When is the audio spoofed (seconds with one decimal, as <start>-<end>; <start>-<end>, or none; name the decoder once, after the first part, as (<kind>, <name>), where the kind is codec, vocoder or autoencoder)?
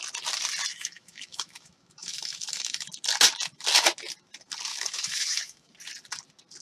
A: 0.7-2.9 (autoencoder, DAC-VAE); 4.7-5.7